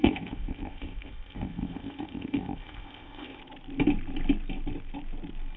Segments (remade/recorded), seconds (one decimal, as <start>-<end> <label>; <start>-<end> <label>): 0.0-3.4 remade; 3.4-5.6 recorded